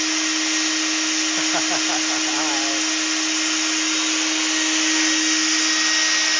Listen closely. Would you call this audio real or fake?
real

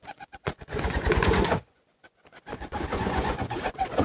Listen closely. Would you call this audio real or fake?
fake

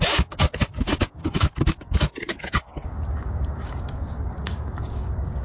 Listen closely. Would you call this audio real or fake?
fake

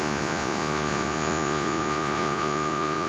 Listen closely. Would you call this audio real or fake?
fake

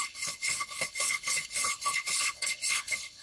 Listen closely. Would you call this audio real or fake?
fake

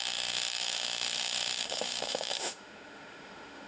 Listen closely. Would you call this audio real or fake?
fake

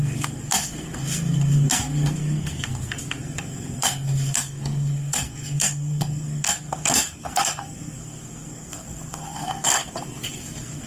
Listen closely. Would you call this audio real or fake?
fake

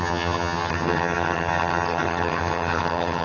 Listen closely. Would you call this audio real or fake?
fake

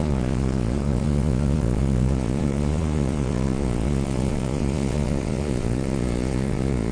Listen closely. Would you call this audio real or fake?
fake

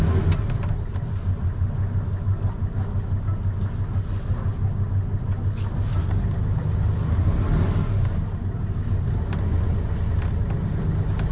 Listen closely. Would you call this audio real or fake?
real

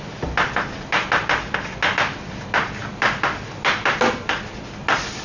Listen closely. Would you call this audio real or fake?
real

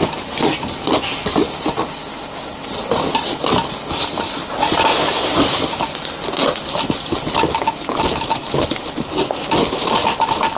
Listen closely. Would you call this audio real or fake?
real